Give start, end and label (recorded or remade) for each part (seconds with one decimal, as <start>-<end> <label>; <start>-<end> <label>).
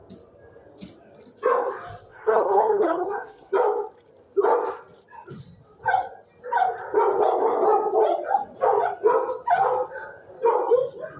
0.0-2.1 recorded; 2.1-3.5 remade; 3.5-11.2 recorded